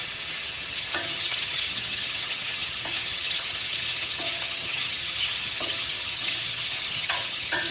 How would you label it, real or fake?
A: fake